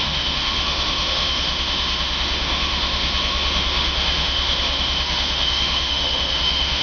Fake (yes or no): yes